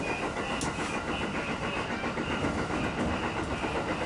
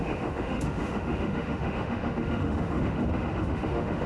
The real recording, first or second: first